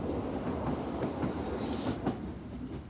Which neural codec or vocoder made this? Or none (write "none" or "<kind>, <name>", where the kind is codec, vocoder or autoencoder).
none